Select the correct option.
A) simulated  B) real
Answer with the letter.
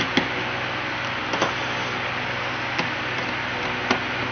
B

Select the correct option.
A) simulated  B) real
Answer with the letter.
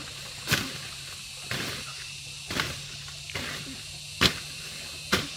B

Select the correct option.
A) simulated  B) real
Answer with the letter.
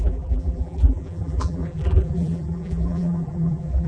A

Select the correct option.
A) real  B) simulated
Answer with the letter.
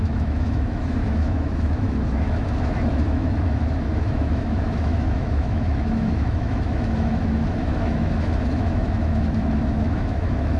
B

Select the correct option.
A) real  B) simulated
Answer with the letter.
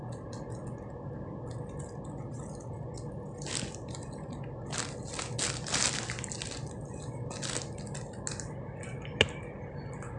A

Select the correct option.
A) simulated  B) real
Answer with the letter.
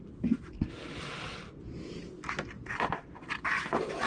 B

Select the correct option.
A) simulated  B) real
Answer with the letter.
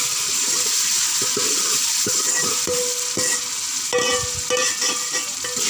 B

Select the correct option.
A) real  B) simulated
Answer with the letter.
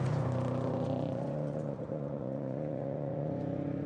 B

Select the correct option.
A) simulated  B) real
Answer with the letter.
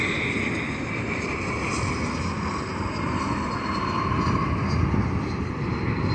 B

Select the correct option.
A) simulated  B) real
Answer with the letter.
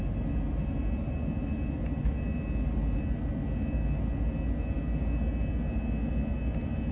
B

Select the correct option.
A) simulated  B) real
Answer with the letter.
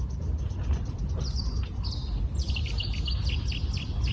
B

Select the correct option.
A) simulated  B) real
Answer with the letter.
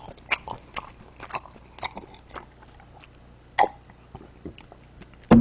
B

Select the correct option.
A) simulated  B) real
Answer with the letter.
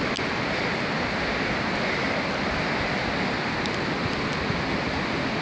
B